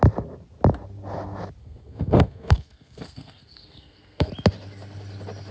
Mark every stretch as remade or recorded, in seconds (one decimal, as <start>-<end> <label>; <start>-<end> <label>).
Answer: 0.0-1.6 recorded; 1.6-4.3 remade; 4.3-5.5 recorded